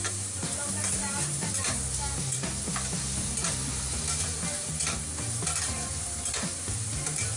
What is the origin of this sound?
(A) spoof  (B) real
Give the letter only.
A